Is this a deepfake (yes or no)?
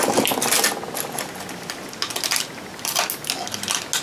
no